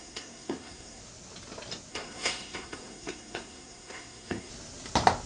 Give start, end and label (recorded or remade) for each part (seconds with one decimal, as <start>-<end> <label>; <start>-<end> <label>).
0.0-1.0 remade; 1.0-1.9 recorded; 1.9-4.5 remade; 4.5-5.3 recorded